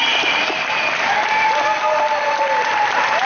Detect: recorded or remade remade